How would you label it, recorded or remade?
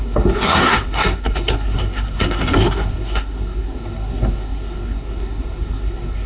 remade